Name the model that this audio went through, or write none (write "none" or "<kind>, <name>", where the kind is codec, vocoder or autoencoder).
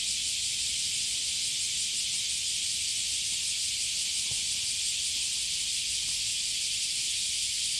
none